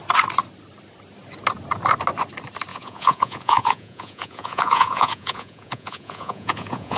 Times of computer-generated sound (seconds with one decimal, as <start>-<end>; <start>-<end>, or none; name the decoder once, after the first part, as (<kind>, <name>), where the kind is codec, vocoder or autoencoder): 2.7-7.0 (vocoder, Vocos)